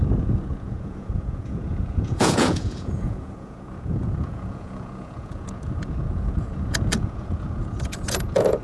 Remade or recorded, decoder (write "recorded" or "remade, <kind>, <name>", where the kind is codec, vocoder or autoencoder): remade, vocoder, Vocos